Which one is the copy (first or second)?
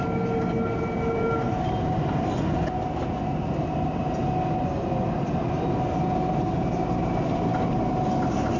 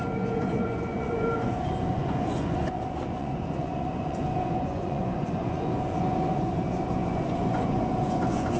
second